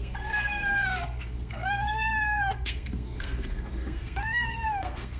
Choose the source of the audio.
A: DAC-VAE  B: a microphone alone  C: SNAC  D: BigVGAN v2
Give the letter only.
C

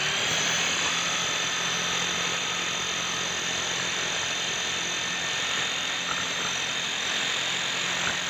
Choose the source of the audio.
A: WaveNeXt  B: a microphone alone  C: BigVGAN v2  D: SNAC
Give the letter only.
B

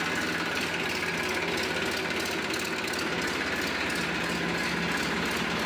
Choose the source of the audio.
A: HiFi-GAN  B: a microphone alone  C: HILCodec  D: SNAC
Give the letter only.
B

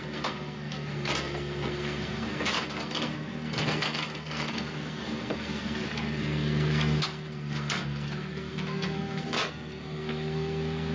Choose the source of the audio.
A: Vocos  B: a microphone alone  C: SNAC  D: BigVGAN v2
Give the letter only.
C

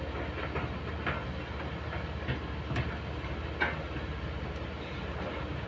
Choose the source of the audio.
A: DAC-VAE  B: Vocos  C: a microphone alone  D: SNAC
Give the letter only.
C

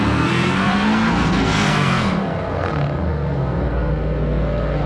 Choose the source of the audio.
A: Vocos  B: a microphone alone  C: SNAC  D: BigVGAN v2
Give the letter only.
C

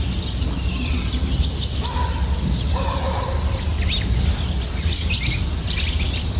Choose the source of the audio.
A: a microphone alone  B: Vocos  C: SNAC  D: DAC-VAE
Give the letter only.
A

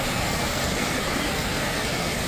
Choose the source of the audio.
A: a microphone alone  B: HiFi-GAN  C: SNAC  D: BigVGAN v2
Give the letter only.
C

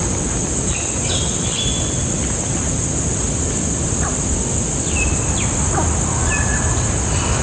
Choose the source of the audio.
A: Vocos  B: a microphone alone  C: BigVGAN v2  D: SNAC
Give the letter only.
B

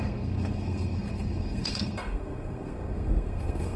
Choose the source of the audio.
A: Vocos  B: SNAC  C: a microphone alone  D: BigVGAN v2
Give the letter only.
B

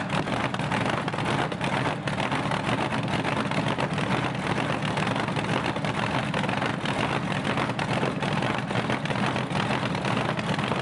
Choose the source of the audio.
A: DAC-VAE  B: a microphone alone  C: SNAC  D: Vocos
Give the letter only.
B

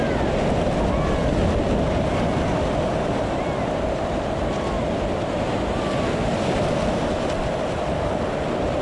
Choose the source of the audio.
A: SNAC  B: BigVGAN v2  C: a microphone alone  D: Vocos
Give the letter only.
C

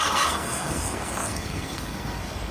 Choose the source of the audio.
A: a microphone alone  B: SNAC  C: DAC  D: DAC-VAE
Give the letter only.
B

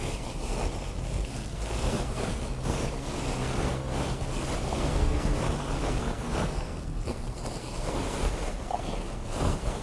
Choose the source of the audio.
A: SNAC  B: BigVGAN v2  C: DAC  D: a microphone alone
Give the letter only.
A